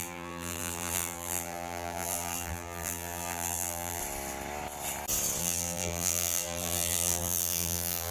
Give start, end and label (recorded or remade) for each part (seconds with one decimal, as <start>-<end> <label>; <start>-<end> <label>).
0.0-4.0 remade; 4.0-5.4 recorded; 5.4-8.1 remade